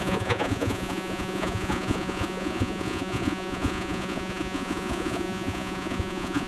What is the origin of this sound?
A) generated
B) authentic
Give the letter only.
A